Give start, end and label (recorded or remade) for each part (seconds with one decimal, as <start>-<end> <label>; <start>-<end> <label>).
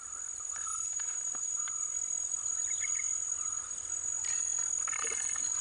0.0-0.7 recorded; 0.7-4.1 remade; 4.1-5.6 recorded